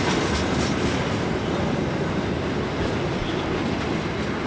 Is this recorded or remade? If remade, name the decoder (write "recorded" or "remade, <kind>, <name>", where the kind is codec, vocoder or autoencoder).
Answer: recorded